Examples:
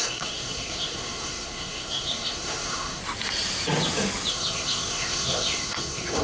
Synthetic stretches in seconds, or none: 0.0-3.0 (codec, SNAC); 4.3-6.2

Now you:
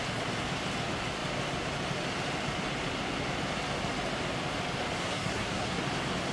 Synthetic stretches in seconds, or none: 5.0-5.8 (codec, SNAC)

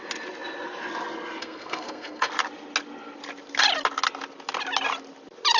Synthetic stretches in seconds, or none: 1.4-2.3 (codec, SNAC)

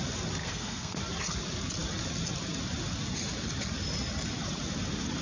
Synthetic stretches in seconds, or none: 0.4-1.0 (codec, SNAC)

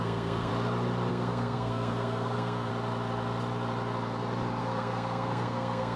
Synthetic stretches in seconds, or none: 0.0-0.5 (codec, SNAC); 1.1-2.7; 4.6-6.0

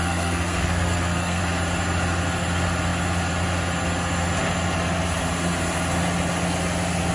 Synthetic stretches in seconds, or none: 0.0-1.4 (codec, SNAC)